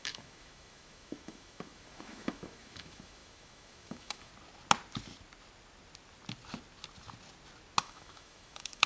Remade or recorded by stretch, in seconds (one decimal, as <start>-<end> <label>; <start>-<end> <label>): 0.0-4.3 remade; 4.3-7.8 recorded; 7.8-8.9 remade